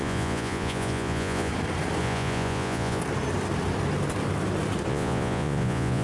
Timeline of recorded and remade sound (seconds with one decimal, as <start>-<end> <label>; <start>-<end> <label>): 0.0-1.5 remade; 1.5-2.0 recorded; 2.0-3.0 remade; 3.0-4.9 recorded; 4.9-6.0 remade